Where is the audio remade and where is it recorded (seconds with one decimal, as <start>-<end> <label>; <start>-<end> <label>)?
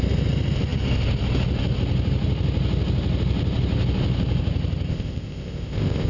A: 0.0-4.9 recorded; 4.9-6.1 remade